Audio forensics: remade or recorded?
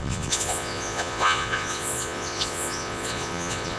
remade